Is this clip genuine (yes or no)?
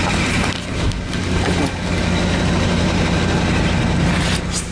yes